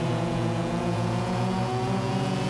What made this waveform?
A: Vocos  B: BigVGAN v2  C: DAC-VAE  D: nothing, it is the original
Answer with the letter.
A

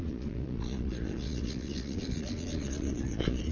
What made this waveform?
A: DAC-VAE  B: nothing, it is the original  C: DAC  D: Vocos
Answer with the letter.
D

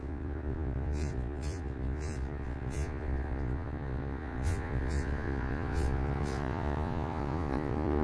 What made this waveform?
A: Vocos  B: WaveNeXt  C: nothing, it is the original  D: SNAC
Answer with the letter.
A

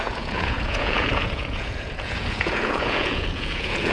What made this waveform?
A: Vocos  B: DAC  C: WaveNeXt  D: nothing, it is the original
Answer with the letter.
A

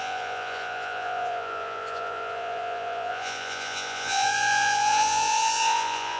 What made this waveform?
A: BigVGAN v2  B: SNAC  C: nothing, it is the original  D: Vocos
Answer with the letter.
D